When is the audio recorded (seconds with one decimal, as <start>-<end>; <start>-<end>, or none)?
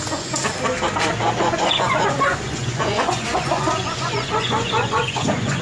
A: 0.4-1.4